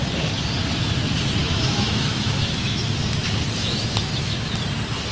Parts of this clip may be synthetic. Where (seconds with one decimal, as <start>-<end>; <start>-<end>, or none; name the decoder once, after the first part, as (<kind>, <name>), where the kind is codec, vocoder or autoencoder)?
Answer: 1.4-2.8 (autoencoder, DAC-VAE); 3.6-4.5